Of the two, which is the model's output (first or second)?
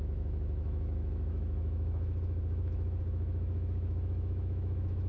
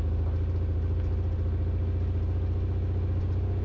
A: first